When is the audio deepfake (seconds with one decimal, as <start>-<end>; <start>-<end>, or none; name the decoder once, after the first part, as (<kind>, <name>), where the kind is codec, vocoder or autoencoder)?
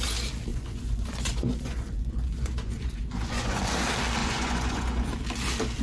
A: 0.5-3.6 (vocoder, Vocos); 4.2-5.1